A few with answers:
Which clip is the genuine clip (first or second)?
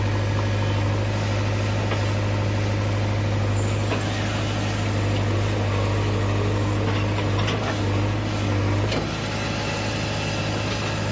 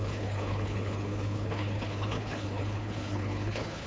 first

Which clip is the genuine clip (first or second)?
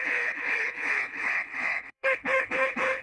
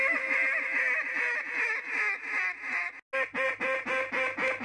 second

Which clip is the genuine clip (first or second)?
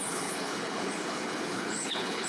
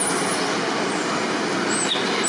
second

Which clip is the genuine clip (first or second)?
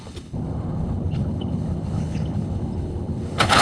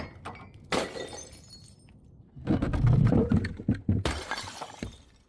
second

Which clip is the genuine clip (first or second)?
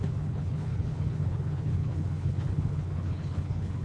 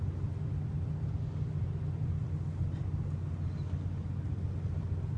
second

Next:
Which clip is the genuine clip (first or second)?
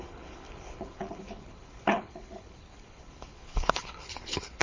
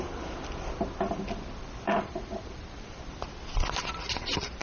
second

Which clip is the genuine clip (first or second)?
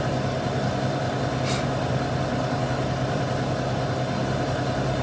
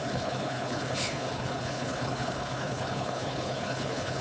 first